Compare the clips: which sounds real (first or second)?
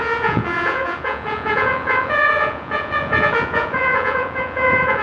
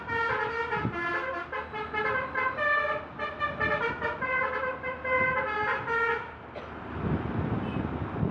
second